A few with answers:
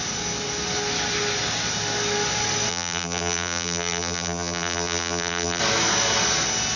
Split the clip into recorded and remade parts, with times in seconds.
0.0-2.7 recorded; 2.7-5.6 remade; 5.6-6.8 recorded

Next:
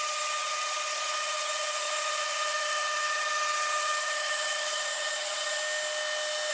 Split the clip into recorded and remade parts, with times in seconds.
0.0-5.6 remade; 5.6-6.5 recorded

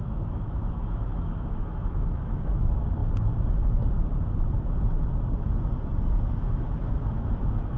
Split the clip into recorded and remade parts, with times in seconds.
0.0-3.0 remade; 3.0-6.5 recorded; 6.5-7.8 remade

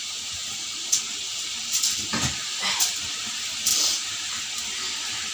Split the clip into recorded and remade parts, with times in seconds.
0.0-0.4 recorded; 0.4-3.3 remade; 3.3-3.7 recorded; 3.7-4.4 remade; 4.4-5.3 recorded

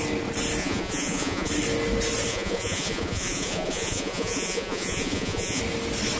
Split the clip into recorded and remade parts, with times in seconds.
0.0-0.6 recorded; 0.6-1.5 remade; 1.5-2.3 recorded; 2.3-5.6 remade; 5.6-6.2 recorded

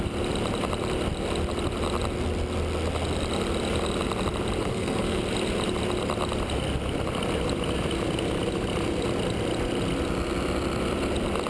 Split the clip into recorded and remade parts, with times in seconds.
0.0-4.6 recorded; 4.6-5.2 remade; 5.2-11.5 recorded

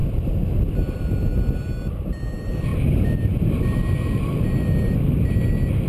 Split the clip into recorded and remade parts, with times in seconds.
0.0-5.9 recorded